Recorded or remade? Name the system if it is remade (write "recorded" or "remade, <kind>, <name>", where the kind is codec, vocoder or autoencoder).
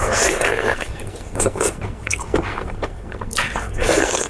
remade, codec, SNAC